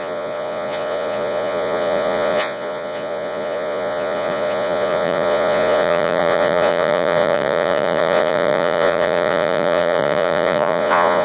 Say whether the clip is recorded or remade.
remade